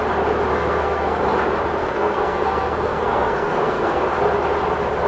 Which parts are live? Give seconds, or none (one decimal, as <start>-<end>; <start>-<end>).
0.0-0.5; 1.2-1.8; 4.0-5.1